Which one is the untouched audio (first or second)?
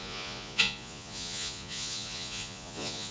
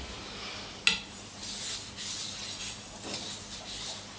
second